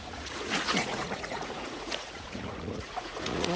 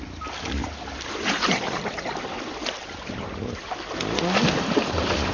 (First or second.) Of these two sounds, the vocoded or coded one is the first